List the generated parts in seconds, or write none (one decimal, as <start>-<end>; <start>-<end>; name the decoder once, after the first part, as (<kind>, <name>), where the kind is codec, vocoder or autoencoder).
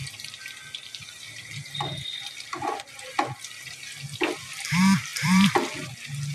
5.1-5.7 (vocoder, BigVGAN v2)